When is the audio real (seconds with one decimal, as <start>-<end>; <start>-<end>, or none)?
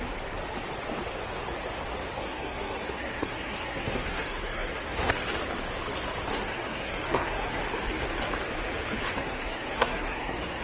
0.0-2.2; 5.1-6.3; 7.6-9.2